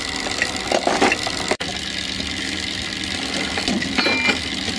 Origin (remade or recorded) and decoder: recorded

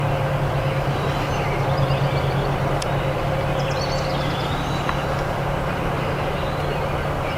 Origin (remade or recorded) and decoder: recorded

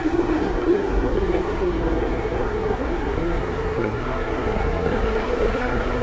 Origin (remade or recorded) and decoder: remade, codec, SNAC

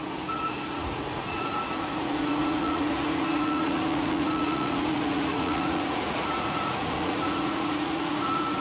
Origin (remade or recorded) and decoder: remade, vocoder, Vocos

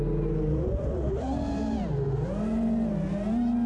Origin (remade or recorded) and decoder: recorded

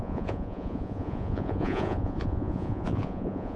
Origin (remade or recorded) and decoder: remade, vocoder, Vocos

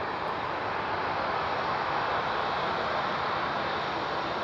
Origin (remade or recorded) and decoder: recorded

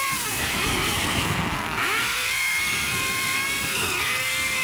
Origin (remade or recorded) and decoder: remade, codec, SNAC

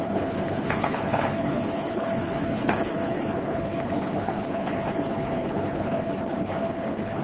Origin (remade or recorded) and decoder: remade, codec, HILCodec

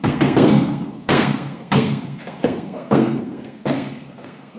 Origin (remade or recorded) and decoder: remade, codec, SNAC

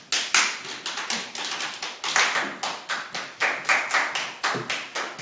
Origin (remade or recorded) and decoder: recorded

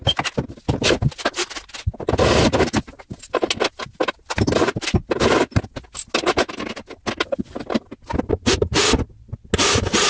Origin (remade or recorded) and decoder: recorded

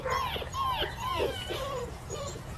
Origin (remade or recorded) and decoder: remade, vocoder, Vocos